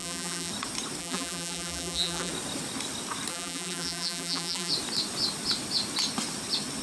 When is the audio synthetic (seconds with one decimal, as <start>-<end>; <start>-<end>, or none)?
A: 0.0-0.5; 1.0-2.3; 3.3-4.7